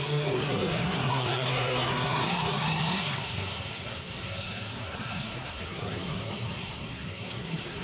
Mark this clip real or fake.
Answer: fake